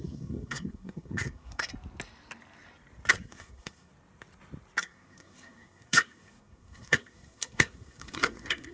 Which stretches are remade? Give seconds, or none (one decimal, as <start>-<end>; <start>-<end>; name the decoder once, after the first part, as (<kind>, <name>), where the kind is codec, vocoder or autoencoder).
0.0-1.7 (codec, SNAC); 3.1-3.9; 4.8-8.7